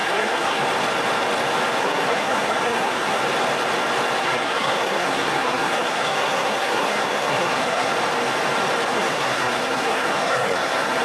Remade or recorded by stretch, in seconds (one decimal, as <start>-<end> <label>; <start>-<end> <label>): 0.0-0.6 remade; 0.6-1.8 recorded; 1.8-3.2 remade; 3.2-4.2 recorded; 4.2-7.9 remade; 7.9-8.9 recorded; 8.9-11.0 remade